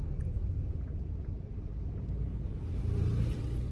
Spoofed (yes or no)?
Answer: no